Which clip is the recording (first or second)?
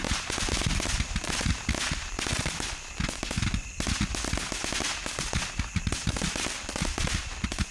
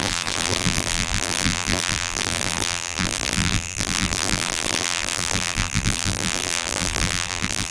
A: first